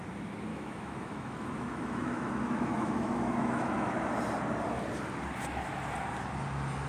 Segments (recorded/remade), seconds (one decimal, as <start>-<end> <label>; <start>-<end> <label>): 0.0-0.5 recorded; 0.5-4.0 remade; 4.0-6.9 recorded